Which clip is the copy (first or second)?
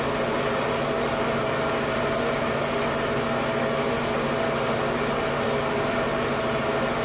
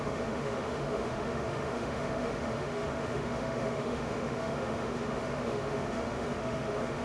second